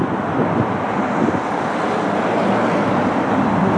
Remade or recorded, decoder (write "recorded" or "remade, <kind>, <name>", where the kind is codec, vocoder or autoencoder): recorded